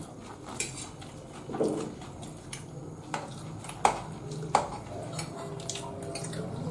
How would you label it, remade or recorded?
recorded